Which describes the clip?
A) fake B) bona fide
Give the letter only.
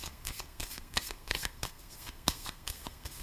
A